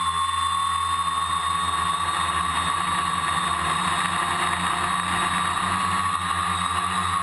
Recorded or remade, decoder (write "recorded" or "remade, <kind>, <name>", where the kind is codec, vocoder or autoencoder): recorded